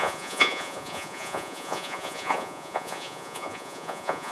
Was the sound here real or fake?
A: fake